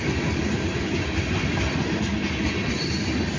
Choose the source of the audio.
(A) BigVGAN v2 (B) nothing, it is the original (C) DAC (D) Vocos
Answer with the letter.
B